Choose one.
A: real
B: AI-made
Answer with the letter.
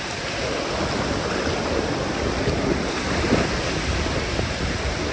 A